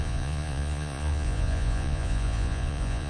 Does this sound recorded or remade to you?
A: remade